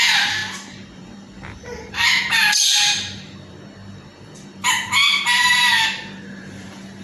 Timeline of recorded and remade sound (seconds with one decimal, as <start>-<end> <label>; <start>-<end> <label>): 0.0-7.0 remade

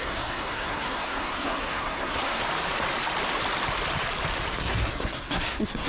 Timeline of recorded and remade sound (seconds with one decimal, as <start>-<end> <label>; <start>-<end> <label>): 0.0-2.4 remade; 2.4-4.6 recorded; 4.6-5.9 remade

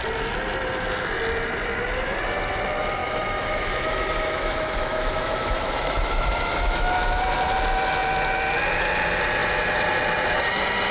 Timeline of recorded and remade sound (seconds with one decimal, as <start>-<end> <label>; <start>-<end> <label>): 0.0-3.0 recorded; 3.0-6.9 remade; 6.9-10.9 recorded

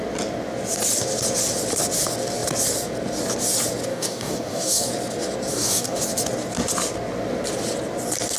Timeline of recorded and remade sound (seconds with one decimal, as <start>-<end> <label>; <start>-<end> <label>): 0.0-3.9 recorded; 3.9-4.9 remade; 4.9-5.5 recorded; 5.5-6.0 remade; 6.0-8.4 recorded

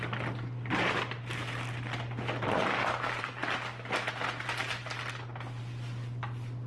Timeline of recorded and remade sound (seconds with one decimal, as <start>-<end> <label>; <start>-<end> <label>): 0.0-3.4 remade; 3.4-5.6 recorded; 5.6-6.7 remade

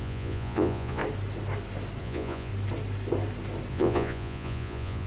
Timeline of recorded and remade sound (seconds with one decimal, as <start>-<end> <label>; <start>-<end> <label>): 0.0-1.0 remade; 1.0-2.0 recorded; 2.0-2.5 remade; 2.5-3.7 recorded; 3.7-5.1 remade

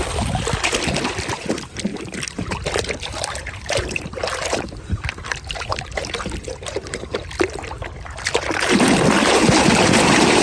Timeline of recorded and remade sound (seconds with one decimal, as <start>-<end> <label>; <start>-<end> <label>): 0.0-3.4 recorded; 3.4-4.2 remade; 4.2-10.4 recorded